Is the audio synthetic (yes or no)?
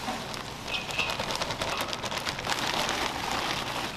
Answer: no